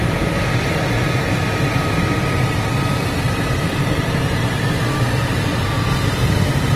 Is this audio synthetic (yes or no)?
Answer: yes